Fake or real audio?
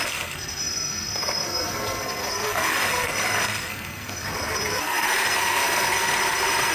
fake